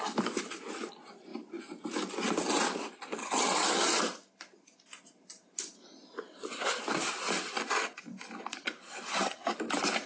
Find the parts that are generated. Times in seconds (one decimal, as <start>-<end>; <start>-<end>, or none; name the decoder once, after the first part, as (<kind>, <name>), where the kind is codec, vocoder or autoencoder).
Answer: 3.2-4.0 (vocoder, HiFi-GAN); 8.8-9.5